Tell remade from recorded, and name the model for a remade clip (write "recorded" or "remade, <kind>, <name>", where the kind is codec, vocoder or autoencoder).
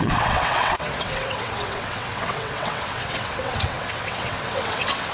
remade, vocoder, WaveNeXt